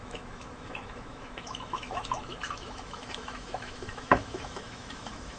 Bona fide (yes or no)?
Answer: no